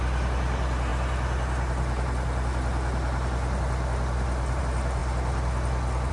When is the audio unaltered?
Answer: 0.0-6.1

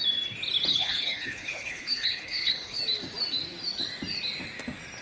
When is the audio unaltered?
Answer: 0.0-0.7; 2.8-5.0

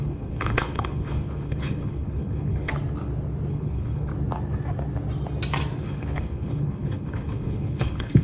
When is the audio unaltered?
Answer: 2.7-3.5; 4.1-5.8

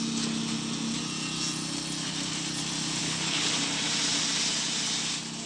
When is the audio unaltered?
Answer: 0.0-3.0; 3.5-5.5

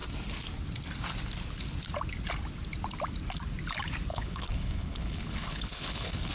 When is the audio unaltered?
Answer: 0.0-4.1

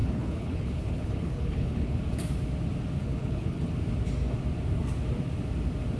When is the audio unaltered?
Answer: 2.0-3.0; 3.7-6.0

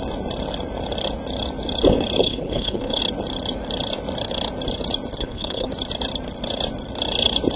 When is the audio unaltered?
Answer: 0.0-2.2; 3.0-5.2; 5.7-7.6